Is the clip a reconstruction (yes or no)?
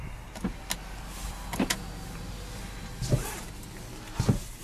no